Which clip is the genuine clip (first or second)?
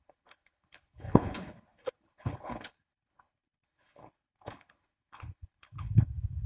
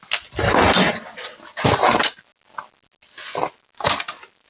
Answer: second